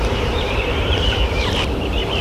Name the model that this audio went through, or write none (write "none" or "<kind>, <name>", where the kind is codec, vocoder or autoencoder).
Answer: vocoder, BigVGAN v2